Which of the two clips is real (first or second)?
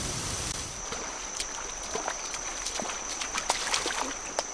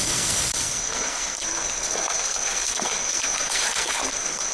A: first